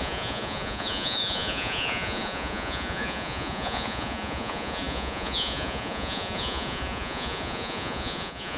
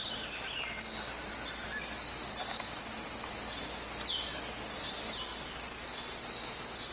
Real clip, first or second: second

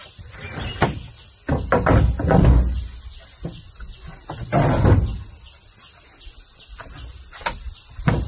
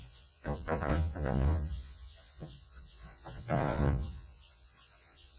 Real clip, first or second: first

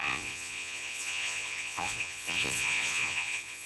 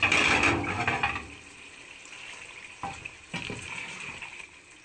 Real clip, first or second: second